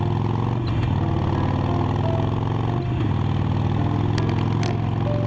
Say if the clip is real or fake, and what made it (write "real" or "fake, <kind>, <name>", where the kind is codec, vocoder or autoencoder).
real